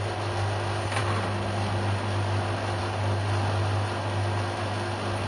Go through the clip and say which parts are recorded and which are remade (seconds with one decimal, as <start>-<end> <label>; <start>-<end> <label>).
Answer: 0.0-5.3 recorded